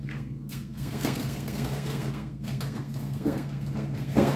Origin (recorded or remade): remade